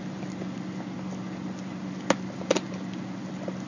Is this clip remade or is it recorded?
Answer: recorded